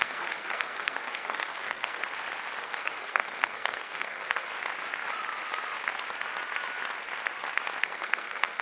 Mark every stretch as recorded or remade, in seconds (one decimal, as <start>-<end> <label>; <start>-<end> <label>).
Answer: 0.0-2.0 remade; 2.0-2.6 recorded; 2.6-4.5 remade; 4.5-7.8 recorded; 7.8-8.6 remade